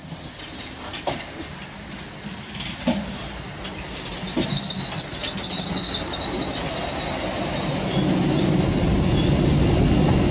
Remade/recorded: recorded